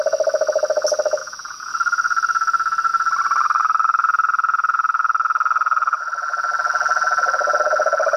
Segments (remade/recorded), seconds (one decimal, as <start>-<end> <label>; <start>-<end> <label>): 0.0-1.2 recorded; 1.2-1.7 remade; 1.7-8.2 recorded